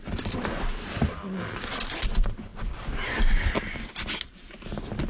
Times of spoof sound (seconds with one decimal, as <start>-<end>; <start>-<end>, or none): none